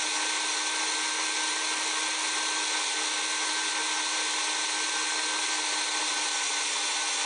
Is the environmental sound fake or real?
real